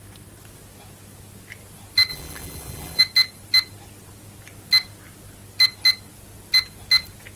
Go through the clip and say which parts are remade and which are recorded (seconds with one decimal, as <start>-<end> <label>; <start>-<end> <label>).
0.0-2.1 recorded; 2.1-3.0 remade; 3.0-7.4 recorded